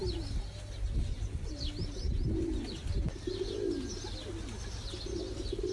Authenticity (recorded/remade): recorded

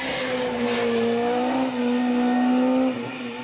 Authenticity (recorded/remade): recorded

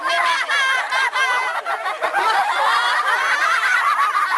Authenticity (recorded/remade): recorded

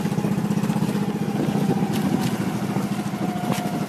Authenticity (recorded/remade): recorded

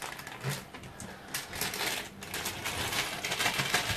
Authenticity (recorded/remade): recorded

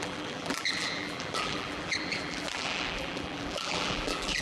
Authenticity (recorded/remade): remade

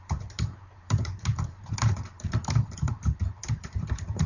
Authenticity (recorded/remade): remade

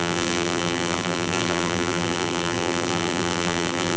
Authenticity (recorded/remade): remade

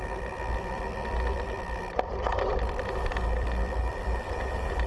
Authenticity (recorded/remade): remade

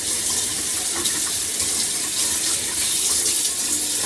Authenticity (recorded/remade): recorded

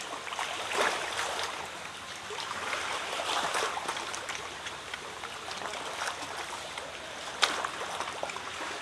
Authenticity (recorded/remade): remade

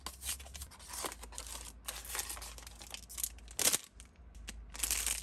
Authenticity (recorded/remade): recorded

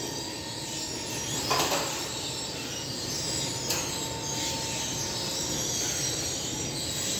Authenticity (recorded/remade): recorded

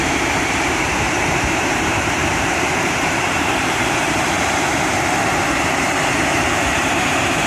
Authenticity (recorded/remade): remade